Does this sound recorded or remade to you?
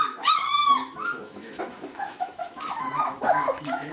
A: remade